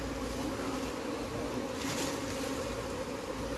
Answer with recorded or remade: recorded